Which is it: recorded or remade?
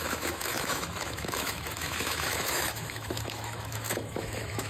remade